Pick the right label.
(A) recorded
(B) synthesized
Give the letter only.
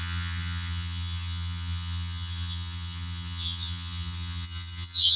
B